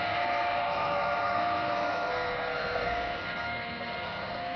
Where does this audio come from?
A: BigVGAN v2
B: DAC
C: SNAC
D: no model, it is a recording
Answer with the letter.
C